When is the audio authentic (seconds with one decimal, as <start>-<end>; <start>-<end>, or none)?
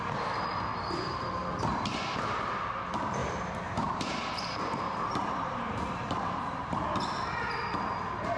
0.0-3.2; 6.4-8.4